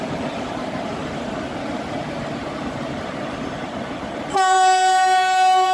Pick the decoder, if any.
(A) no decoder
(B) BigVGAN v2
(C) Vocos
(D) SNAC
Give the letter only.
B